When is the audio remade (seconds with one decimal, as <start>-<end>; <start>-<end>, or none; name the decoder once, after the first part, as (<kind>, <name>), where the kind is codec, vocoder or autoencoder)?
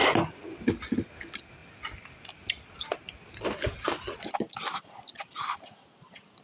none